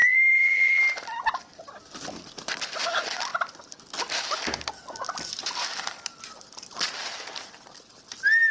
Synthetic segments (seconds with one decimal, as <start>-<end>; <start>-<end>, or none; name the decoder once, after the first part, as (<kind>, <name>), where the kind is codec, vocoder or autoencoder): 0.0-0.8 (vocoder, BigVGAN v2)

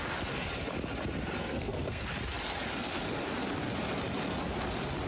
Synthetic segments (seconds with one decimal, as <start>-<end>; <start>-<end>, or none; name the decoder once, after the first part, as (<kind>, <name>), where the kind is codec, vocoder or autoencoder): 1.4-2.1 (codec, SNAC)

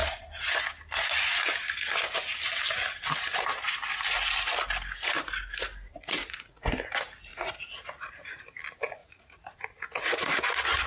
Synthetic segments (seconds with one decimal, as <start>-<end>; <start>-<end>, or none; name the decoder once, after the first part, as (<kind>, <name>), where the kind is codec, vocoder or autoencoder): 5.9-6.7 (vocoder, Vocos); 7.3-8.4; 9.0-10.4

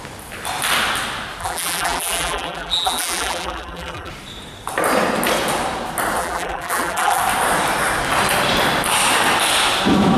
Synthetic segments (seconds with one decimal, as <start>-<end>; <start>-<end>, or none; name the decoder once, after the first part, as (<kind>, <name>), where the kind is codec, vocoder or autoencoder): 1.4-4.1 (vocoder, BigVGAN v2); 6.2-7.2

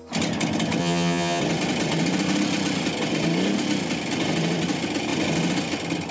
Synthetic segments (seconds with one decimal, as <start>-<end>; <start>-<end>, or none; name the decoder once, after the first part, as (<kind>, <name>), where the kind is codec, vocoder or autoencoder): 0.8-1.4 (vocoder, HiFi-GAN)